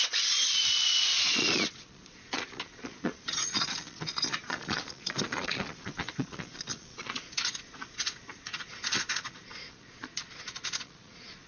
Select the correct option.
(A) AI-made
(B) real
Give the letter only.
A